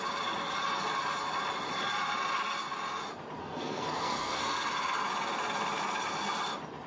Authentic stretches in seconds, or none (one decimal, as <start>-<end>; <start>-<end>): 0.0-3.4; 4.7-6.9